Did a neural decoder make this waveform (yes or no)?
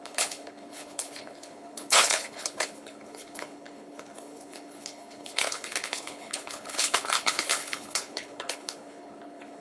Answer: yes